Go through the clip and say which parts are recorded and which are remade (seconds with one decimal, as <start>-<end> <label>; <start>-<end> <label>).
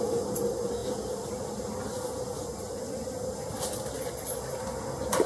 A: 0.0-5.3 recorded